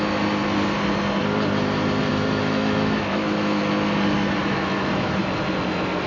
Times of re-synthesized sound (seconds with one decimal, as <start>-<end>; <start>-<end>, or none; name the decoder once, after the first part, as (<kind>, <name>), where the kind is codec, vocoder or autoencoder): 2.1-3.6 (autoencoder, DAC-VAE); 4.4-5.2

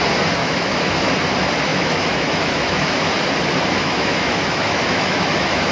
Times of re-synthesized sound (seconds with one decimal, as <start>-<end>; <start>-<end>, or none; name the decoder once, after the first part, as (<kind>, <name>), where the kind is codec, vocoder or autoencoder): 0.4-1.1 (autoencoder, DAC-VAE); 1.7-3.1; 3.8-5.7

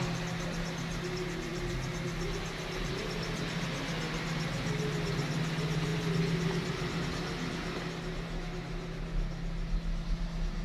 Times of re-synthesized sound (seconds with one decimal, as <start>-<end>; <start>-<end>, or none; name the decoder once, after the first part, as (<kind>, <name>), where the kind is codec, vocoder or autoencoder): none

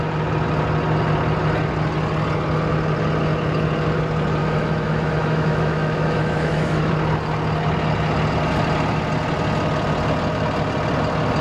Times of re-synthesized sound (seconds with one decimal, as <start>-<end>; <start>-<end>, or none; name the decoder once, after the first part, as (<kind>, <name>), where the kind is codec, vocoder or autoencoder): 4.4-6.9 (autoencoder, DAC-VAE)

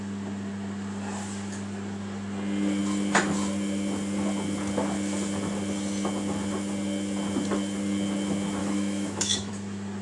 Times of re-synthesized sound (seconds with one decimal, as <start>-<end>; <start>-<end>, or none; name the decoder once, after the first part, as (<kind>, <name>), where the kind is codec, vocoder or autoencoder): 8.6-9.5 (autoencoder, DAC-VAE)